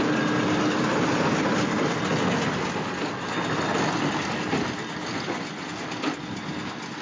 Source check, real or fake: real